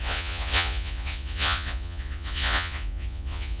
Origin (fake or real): fake